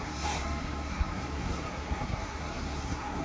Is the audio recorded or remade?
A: remade